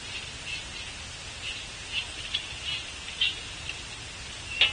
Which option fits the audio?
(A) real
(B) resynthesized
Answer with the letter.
A